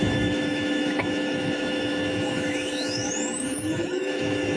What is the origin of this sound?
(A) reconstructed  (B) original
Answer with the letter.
A